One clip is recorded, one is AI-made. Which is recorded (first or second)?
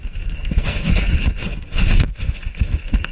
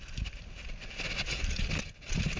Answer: second